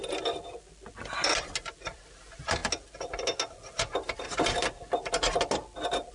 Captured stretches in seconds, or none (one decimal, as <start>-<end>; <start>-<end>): 0.0-6.1